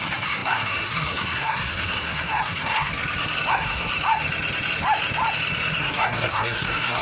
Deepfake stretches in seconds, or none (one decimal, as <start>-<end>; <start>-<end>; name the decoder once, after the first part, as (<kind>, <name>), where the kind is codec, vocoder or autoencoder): 0.0-2.9 (codec, SNAC); 3.5-3.9; 5.8-7.0